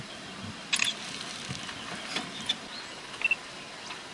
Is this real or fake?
real